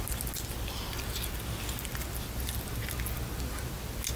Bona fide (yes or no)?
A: yes